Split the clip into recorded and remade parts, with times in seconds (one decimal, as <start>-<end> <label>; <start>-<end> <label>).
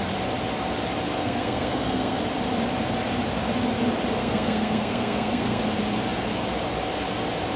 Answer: 0.0-1.2 recorded; 1.2-2.2 remade; 2.2-4.2 recorded; 4.2-5.6 remade; 5.6-7.6 recorded